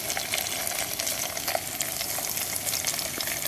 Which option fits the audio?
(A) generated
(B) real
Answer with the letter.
B